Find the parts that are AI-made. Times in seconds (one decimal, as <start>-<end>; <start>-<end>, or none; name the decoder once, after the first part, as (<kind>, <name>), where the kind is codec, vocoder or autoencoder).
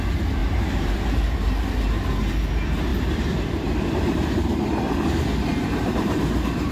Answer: 0.4-1.2 (vocoder, BigVGAN v2); 2.9-4.6; 5.5-6.7